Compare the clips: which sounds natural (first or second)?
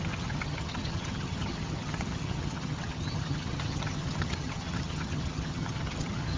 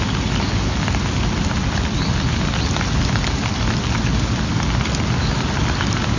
second